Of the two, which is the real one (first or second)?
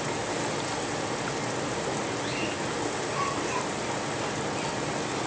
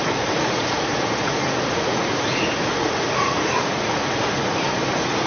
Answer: first